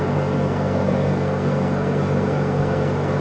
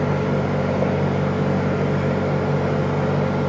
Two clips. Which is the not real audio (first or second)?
first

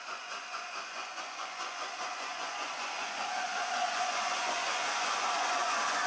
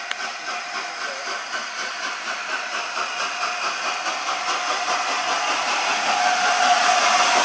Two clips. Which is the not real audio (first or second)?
first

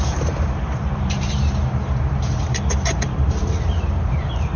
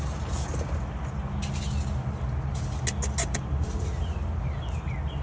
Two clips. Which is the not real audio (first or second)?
first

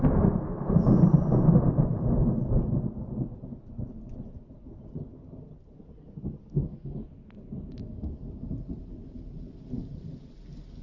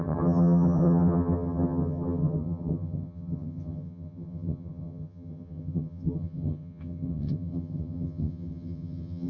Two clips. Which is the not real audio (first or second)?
second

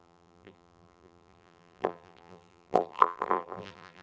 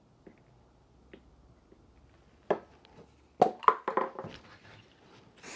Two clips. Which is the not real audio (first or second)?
first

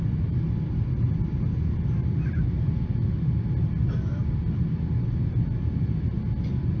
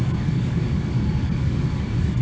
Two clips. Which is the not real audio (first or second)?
second